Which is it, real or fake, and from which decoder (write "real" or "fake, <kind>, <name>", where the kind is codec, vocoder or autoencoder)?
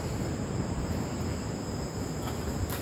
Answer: real